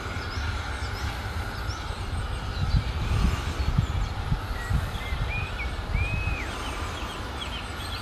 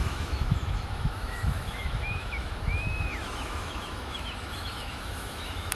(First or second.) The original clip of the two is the first